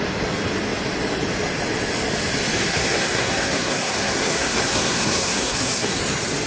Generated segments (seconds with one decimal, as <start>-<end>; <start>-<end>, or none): 2.6-6.0